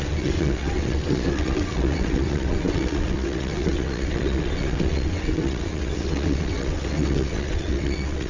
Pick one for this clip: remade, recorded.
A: remade